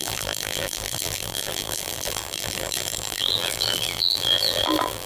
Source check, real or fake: fake